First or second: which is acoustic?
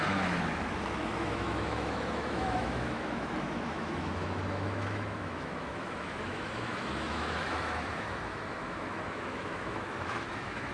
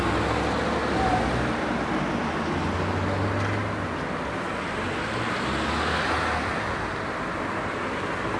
second